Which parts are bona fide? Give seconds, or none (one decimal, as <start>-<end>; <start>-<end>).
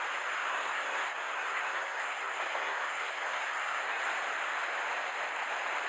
0.0-0.5; 4.0-5.9